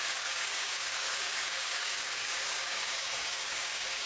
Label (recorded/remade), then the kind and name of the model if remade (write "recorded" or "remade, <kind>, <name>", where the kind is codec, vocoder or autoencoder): remade, codec, DAC